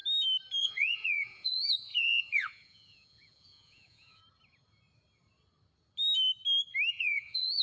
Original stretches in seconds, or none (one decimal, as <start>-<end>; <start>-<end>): 0.0-0.6; 4.2-6.9